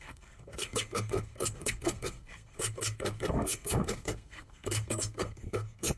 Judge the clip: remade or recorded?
remade